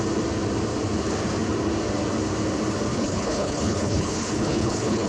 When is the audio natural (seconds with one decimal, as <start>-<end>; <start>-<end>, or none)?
0.0-2.9